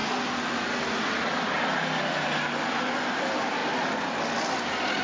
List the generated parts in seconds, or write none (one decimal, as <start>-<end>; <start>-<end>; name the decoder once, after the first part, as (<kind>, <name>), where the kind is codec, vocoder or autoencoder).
none